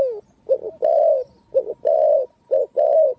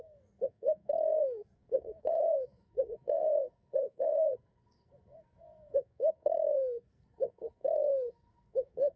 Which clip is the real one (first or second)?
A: first